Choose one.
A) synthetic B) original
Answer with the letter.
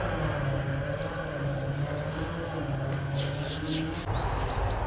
B